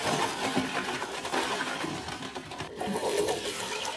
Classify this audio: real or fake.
real